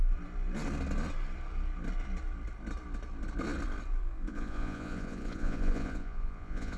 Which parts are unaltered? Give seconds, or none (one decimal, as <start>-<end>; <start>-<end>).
0.0-4.3